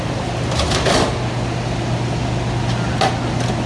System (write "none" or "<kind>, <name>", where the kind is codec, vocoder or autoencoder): none